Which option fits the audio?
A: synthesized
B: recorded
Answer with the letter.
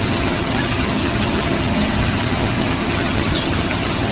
A